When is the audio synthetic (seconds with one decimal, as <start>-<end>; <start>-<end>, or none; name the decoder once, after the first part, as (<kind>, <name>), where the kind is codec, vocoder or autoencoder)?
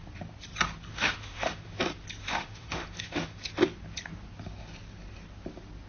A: 0.9-1.8 (autoencoder, DAC-VAE); 2.2-3.5